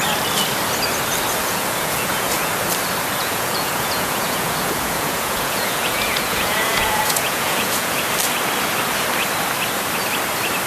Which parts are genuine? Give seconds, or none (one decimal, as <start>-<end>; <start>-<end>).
0.0-1.4; 2.5-3.2; 8.0-10.7